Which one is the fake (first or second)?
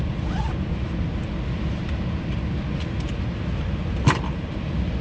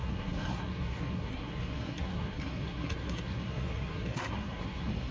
second